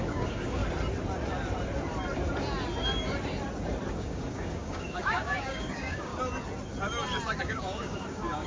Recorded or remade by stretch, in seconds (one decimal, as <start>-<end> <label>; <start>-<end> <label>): 0.0-0.6 remade; 0.6-3.9 recorded; 3.9-6.1 remade; 6.1-7.4 recorded; 7.4-8.5 remade